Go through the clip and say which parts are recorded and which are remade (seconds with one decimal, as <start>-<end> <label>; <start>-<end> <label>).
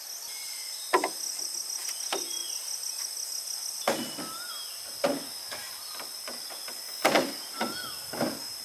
0.0-8.6 recorded